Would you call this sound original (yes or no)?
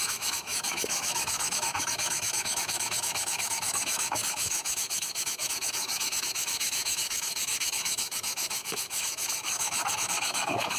no